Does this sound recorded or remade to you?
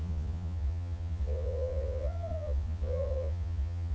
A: remade